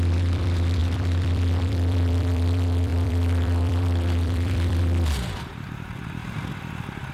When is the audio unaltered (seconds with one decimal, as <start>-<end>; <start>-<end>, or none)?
6.2-7.1